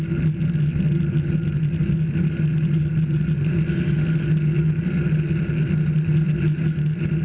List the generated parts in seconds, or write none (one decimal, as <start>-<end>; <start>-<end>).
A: none

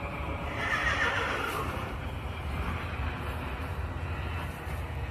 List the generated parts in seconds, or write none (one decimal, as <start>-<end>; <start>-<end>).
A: 0.0-3.7

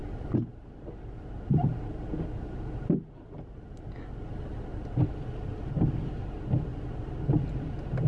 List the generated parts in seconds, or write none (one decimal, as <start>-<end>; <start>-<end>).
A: 0.0-3.9

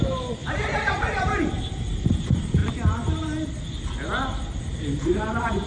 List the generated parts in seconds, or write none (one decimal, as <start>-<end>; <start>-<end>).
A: 0.0-2.6; 4.6-5.7

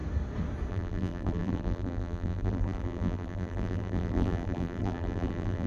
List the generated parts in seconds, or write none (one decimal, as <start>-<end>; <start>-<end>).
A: 0.7-5.7

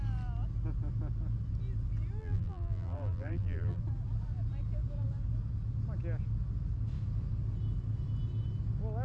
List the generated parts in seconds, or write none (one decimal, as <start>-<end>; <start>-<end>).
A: 2.2-3.8